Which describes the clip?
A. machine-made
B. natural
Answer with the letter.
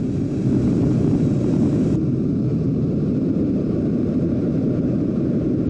A